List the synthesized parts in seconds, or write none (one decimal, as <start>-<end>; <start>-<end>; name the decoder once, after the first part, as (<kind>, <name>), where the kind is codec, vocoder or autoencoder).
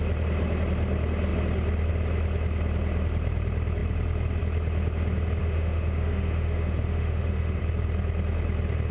5.4-7.6 (autoencoder, DAC-VAE)